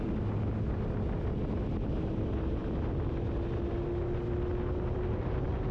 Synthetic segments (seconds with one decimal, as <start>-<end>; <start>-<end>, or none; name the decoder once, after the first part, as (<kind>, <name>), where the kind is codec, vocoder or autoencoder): none